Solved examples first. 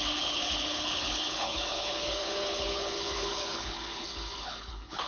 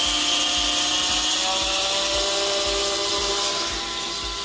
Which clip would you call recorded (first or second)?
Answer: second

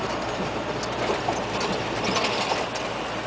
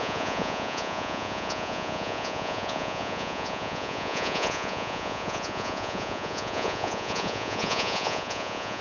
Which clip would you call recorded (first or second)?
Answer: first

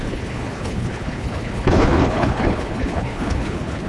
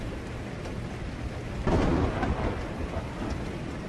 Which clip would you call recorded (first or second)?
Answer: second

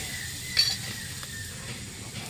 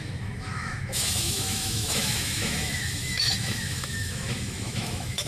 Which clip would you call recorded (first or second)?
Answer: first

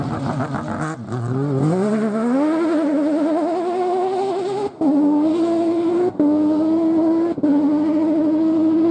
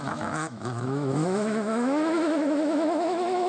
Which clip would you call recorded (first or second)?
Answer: first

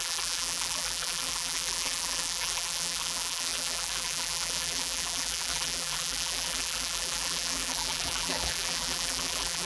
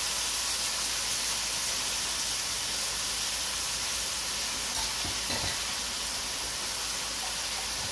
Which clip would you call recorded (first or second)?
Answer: second